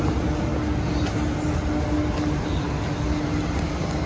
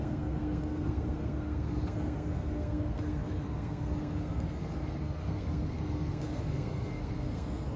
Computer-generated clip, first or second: second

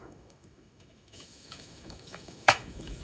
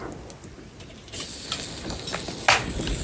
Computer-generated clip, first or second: first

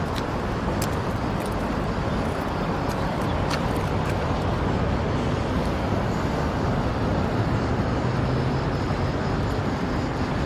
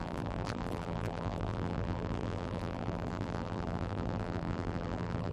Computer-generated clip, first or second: second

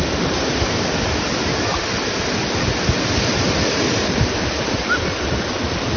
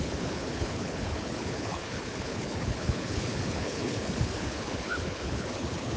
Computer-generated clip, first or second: second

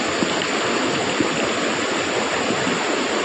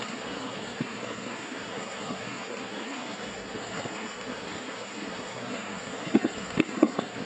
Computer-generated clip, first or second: second